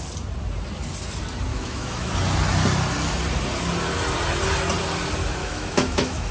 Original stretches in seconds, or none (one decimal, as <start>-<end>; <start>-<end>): 0.0-1.5; 2.1-5.4